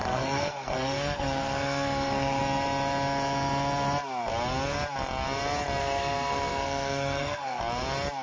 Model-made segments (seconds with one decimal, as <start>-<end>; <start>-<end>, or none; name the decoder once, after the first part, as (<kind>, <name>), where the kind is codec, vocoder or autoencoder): 0.0-2.4 (codec, SNAC); 5.8-7.6